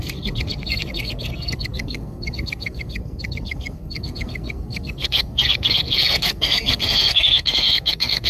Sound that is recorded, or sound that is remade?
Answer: remade